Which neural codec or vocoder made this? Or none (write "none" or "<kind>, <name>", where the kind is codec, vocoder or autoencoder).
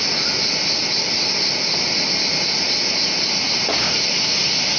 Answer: none